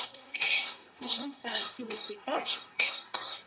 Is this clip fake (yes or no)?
yes